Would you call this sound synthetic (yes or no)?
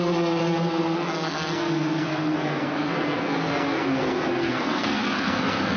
yes